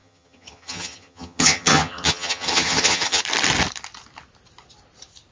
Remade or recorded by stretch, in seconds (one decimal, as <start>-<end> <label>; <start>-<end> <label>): 0.0-3.2 remade; 3.2-5.3 recorded